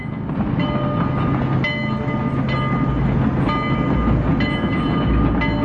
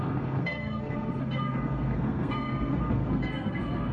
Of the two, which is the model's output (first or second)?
second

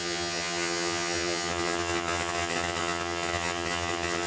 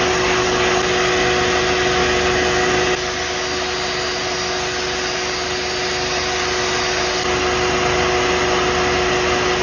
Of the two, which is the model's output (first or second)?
first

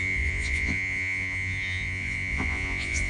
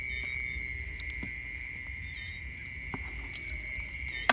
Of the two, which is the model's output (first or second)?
first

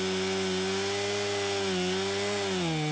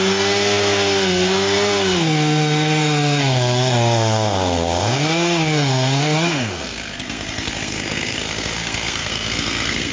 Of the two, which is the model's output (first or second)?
second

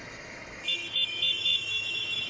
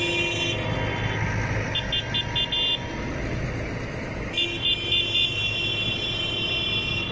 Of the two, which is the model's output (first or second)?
first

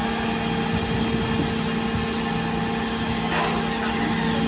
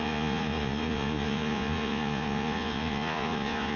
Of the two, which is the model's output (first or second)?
second